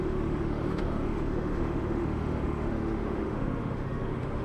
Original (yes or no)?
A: no